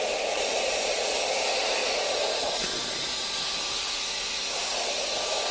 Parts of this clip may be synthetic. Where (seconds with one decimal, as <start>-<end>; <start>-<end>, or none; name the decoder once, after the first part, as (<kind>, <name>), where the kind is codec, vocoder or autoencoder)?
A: 1.8-3.3 (vocoder, BigVGAN v2)